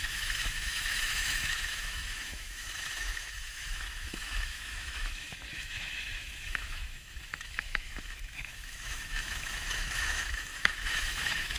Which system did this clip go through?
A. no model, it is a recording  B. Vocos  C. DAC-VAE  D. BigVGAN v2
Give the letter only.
C